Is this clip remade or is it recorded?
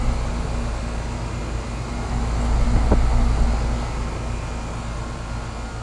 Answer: recorded